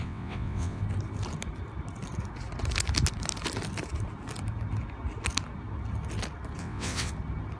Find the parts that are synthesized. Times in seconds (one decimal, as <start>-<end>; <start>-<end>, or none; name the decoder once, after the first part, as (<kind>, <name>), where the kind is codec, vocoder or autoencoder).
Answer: 0.0-0.8 (vocoder, WaveNeXt); 6.6-7.1